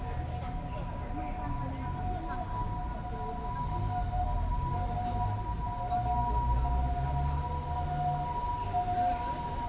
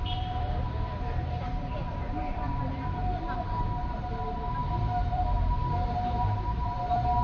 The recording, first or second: first